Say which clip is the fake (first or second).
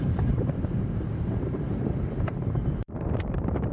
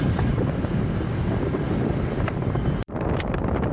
first